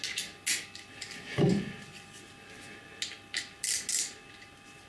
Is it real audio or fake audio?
real